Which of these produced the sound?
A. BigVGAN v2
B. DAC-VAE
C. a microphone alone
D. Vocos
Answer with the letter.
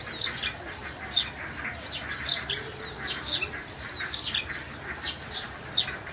C